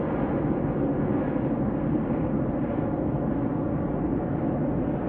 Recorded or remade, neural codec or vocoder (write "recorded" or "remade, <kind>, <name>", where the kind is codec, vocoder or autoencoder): recorded